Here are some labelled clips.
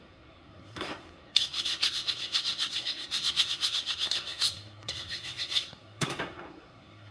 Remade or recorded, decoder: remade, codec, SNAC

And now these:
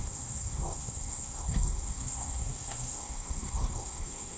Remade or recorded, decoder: remade, codec, SNAC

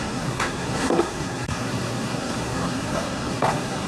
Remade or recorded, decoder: remade, codec, SNAC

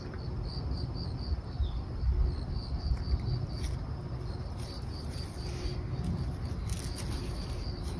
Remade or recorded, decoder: recorded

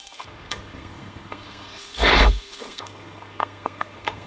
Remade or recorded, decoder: remade, codec, SNAC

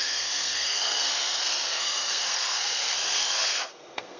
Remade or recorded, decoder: remade, codec, SNAC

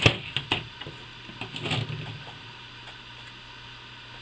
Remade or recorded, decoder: recorded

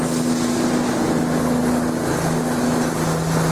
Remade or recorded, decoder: recorded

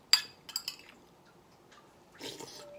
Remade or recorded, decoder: recorded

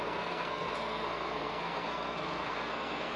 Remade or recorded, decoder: remade, codec, SNAC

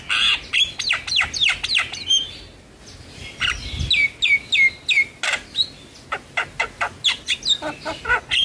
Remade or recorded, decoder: recorded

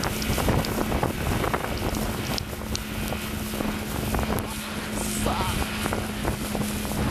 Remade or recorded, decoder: recorded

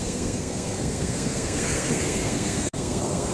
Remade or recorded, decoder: remade, codec, SNAC